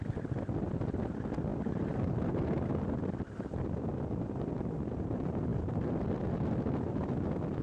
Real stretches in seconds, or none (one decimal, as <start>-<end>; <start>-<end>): 0.0-1.5; 2.4-7.6